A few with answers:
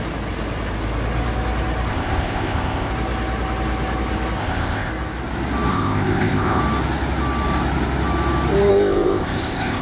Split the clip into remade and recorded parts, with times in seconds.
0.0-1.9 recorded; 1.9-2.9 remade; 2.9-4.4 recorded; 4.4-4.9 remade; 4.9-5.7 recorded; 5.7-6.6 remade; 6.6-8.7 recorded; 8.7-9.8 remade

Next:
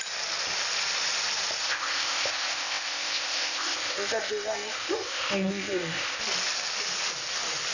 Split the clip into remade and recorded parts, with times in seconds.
0.0-1.6 recorded; 1.6-6.2 remade; 6.2-7.7 recorded

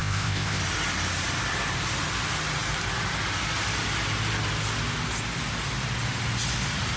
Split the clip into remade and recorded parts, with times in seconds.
0.0-0.6 remade; 0.6-7.0 recorded

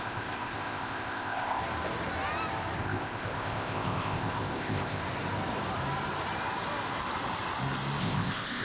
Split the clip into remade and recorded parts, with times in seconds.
0.0-1.6 remade; 1.6-2.8 recorded; 2.8-5.0 remade; 5.0-8.0 recorded; 8.0-8.6 remade

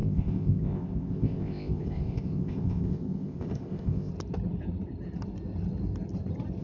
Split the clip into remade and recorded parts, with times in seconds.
0.0-4.1 remade; 4.1-6.6 recorded

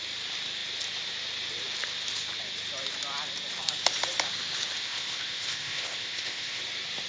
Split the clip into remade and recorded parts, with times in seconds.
0.0-4.8 recorded; 4.8-6.6 remade; 6.6-7.1 recorded